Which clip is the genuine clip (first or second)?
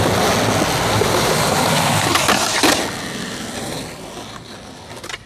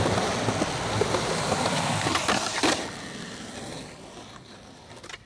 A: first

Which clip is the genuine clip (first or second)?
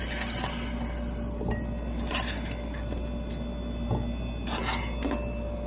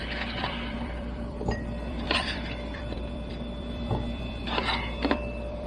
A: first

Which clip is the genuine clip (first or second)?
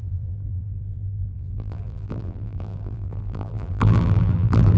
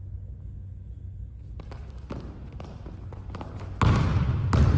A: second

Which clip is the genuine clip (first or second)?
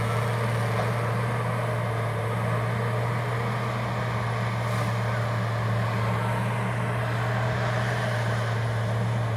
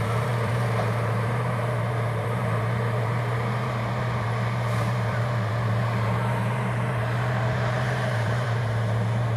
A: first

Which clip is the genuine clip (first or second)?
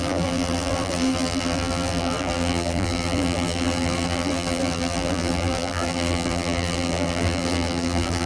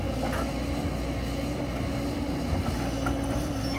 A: second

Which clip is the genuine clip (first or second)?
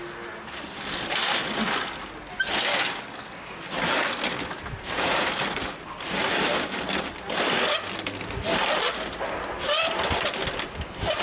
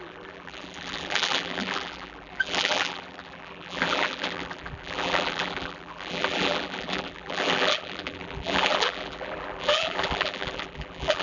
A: first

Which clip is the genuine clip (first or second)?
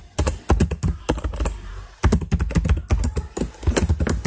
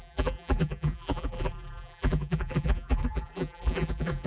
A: first